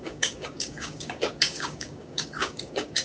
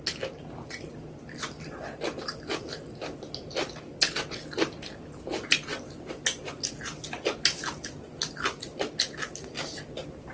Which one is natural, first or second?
second